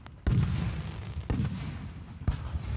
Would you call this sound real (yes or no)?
yes